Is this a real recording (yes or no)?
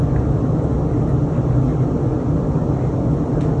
yes